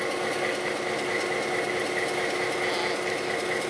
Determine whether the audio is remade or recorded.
recorded